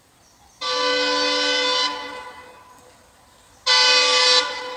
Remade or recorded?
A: recorded